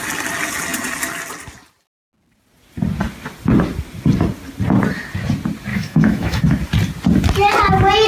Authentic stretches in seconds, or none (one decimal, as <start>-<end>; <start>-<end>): 0.0-5.7; 6.4-8.1